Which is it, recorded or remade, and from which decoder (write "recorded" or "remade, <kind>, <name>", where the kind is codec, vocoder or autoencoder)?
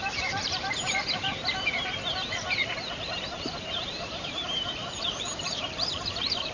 remade, vocoder, BigVGAN v2